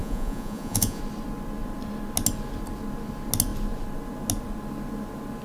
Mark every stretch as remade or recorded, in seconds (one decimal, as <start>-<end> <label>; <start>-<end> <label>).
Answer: 0.0-1.0 remade; 1.0-5.4 recorded